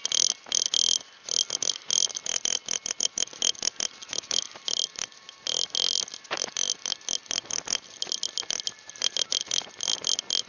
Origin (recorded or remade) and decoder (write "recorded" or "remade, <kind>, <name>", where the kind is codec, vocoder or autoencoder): recorded